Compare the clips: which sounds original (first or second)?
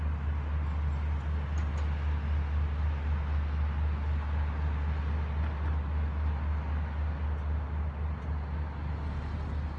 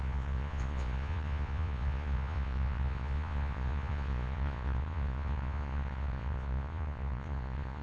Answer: first